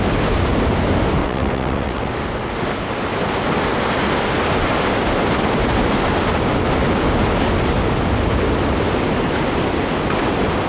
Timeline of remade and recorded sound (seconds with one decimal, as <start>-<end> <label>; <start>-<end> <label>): 0.0-1.2 recorded; 1.2-2.1 remade; 2.1-10.7 recorded